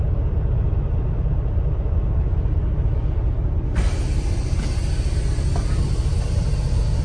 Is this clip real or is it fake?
real